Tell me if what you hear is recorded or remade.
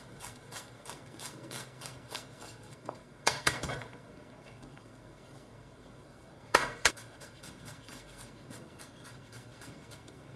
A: remade